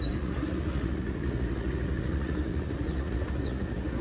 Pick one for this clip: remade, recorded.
remade